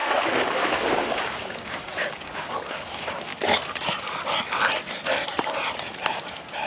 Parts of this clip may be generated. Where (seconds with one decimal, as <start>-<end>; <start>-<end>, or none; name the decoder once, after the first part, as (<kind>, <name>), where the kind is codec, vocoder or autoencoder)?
0.0-3.3 (codec, DAC)